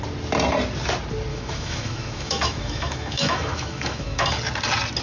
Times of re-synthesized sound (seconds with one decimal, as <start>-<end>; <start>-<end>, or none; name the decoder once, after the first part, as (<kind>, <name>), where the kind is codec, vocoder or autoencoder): 1.3-4.3 (autoencoder, DAC-VAE)